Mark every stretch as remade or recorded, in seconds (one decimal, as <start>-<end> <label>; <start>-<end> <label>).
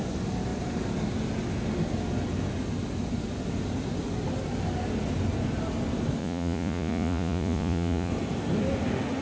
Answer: 0.0-6.2 recorded; 6.2-8.1 remade; 8.1-9.2 recorded